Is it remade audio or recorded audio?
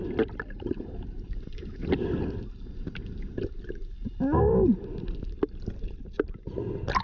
recorded